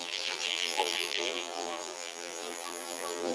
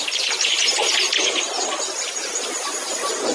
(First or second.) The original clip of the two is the second